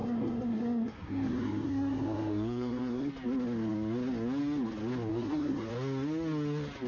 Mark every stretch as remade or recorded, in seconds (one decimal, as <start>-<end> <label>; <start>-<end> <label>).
0.0-3.1 remade; 3.1-5.1 recorded; 5.1-5.7 remade; 5.7-6.9 recorded